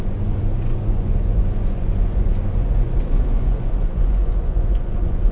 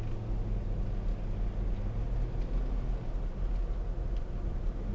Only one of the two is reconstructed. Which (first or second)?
first